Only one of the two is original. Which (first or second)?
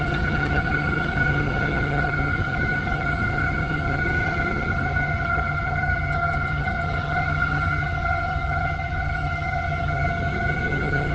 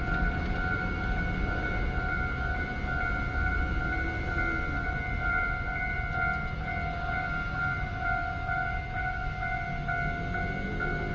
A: second